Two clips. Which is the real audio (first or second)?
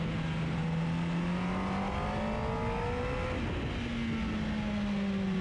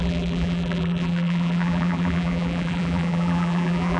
first